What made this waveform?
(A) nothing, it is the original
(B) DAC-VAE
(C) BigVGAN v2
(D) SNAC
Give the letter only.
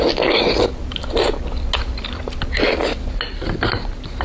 A